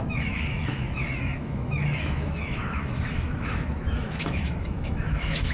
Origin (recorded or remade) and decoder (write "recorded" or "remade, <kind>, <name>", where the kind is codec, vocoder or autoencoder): remade, autoencoder, DAC-VAE